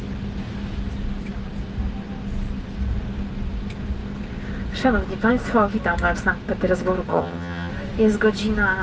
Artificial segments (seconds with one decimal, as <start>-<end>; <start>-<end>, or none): 7.1-7.7